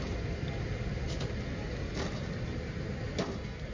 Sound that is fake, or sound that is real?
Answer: real